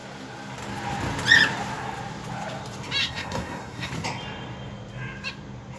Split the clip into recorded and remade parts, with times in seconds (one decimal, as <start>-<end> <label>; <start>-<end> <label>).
0.0-3.0 recorded; 3.0-3.9 remade; 3.9-5.8 recorded